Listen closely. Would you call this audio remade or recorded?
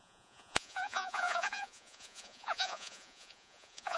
remade